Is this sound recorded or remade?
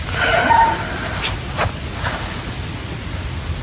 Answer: recorded